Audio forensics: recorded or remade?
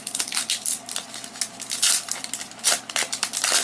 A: recorded